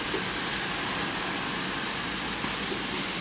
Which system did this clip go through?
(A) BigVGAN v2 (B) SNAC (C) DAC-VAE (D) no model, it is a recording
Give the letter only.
D